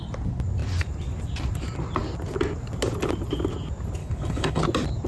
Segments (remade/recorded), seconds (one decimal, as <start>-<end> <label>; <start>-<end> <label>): 0.0-4.0 recorded; 4.0-4.6 remade; 4.6-5.1 recorded